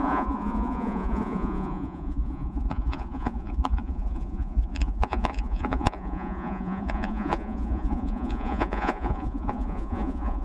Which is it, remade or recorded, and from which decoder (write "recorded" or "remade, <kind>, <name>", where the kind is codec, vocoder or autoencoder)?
remade, vocoder, Vocos